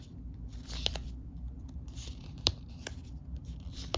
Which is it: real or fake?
fake